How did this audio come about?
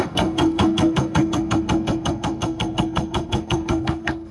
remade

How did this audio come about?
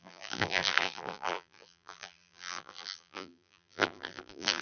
remade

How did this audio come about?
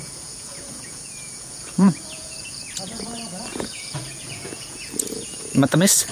remade